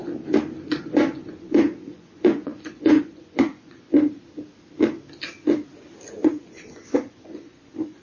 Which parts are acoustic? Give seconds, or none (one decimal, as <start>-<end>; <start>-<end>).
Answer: 0.0-0.8; 3.9-6.1